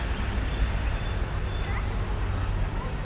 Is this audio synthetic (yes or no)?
no